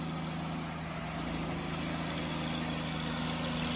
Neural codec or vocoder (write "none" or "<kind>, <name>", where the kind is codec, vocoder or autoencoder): none